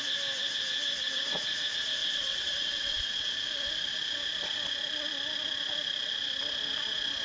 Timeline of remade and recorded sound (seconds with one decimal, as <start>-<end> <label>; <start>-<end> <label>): 0.0-2.0 recorded; 2.0-3.3 remade; 3.3-7.2 recorded